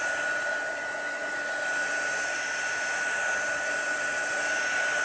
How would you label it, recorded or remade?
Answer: recorded